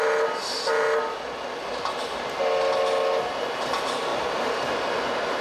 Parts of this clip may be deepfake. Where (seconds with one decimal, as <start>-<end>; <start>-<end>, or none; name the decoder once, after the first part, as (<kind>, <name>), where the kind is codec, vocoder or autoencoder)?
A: 4.1-5.0 (vocoder, BigVGAN v2)